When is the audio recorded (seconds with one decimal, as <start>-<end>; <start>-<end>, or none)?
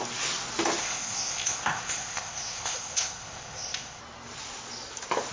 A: 0.0-0.8; 4.0-5.3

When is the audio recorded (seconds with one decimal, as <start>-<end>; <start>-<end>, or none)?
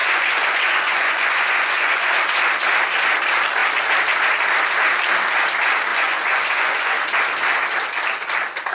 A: 2.1-5.9; 7.0-8.7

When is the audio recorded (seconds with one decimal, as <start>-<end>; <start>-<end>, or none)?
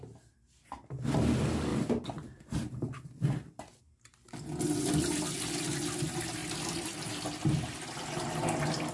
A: 0.0-1.7; 3.8-6.4; 7.2-8.9